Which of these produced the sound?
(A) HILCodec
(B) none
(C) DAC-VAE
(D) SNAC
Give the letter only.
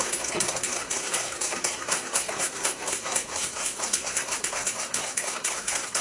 D